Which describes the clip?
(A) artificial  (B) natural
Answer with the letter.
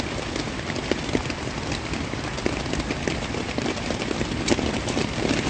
B